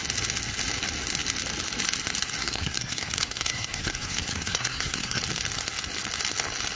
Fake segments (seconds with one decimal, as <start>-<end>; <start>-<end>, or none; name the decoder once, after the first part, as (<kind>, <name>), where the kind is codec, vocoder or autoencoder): 2.4-5.2 (codec, SNAC)